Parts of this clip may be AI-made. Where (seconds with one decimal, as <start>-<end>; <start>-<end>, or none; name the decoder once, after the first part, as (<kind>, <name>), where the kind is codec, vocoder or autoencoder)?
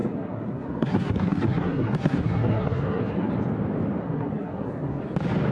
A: 0.0-3.3 (codec, SNAC); 4.0-5.0